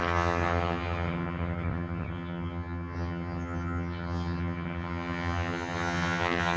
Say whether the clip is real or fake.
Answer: fake